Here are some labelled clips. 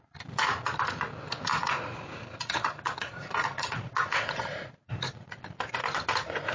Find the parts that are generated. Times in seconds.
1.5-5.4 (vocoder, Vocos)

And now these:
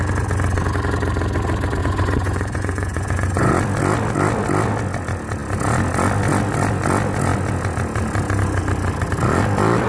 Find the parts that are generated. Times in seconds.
1.8-3.5 (vocoder, Vocos)